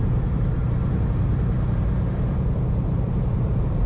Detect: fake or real fake